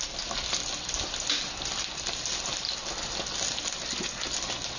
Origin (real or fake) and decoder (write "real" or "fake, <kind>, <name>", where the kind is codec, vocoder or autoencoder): real